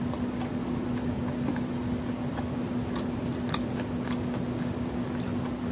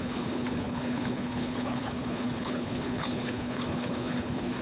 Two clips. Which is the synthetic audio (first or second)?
second